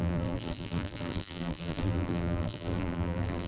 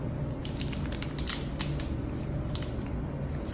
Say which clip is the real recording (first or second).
second